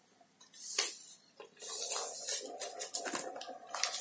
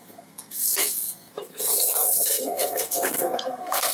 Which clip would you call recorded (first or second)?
first